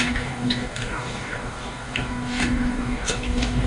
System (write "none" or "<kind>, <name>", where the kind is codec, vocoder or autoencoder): codec, DAC